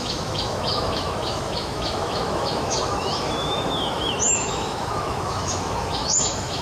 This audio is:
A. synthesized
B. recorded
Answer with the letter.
A